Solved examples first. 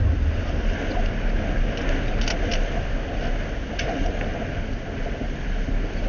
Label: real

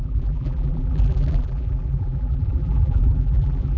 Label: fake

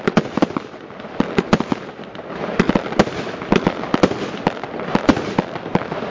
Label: real